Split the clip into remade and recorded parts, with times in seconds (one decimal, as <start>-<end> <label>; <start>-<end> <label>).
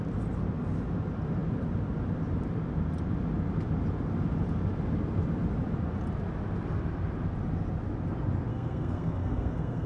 0.0-8.5 recorded; 8.5-9.9 remade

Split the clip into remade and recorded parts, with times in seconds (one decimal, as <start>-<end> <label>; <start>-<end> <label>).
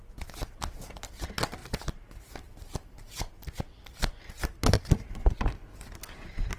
0.0-0.4 recorded; 0.4-1.1 remade; 1.1-1.6 recorded; 1.6-4.3 remade; 4.3-6.6 recorded